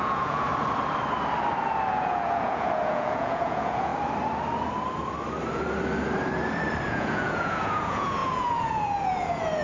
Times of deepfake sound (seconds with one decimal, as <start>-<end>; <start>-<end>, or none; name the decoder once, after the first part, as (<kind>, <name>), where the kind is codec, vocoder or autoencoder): 0.0-0.5 (vocoder, Vocos); 1.9-3.9; 6.9-9.6